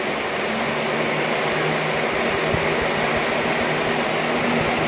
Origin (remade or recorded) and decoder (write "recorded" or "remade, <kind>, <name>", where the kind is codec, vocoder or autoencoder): recorded